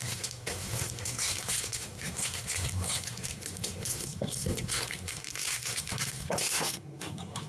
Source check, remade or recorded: remade